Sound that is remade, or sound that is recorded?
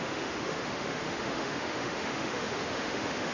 remade